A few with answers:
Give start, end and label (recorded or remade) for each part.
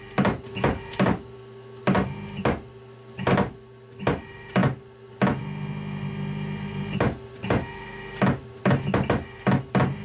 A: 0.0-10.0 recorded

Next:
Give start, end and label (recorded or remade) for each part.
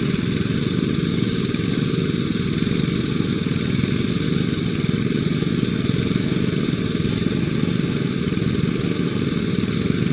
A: 0.0-1.1 recorded; 1.1-1.7 remade; 1.7-10.1 recorded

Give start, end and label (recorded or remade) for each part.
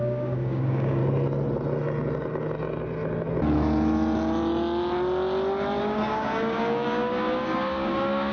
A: 0.0-1.0 remade; 1.0-5.8 recorded; 5.8-8.3 remade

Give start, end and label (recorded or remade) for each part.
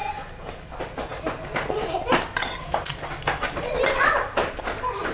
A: 0.0-5.1 recorded